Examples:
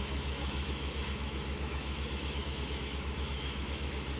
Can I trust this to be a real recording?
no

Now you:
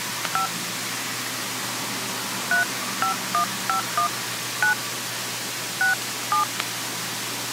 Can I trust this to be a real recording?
yes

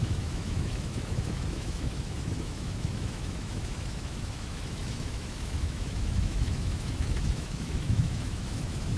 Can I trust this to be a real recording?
no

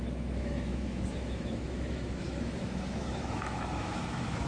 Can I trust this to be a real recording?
no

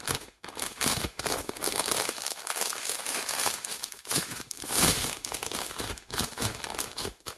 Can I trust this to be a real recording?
no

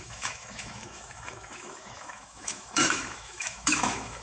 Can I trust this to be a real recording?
no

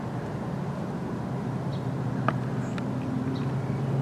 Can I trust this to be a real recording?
yes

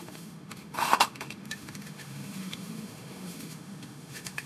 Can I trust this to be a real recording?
no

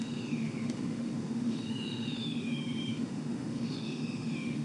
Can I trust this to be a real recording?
no